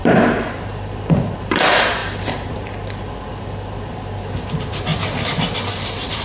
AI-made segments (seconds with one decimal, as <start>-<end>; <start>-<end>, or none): 0.0-4.9; 5.7-6.2